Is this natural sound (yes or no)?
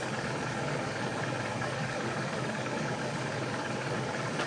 no